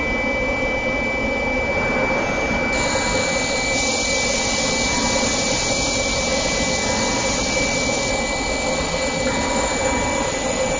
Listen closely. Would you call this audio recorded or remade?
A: recorded